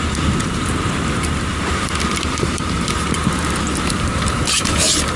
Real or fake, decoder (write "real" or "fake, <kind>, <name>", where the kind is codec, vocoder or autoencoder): fake, vocoder, BigVGAN v2